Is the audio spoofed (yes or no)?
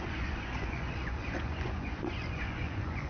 yes